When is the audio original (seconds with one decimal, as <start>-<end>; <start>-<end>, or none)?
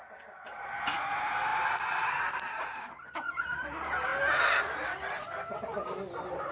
0.0-6.5